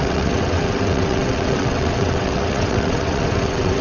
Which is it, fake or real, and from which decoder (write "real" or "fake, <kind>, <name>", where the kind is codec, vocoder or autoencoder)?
fake, vocoder, WaveNeXt